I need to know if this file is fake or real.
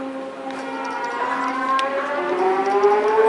real